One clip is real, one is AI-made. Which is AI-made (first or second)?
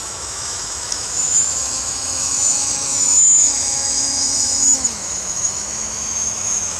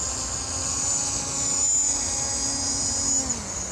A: first